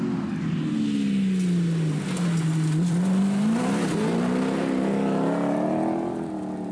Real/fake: real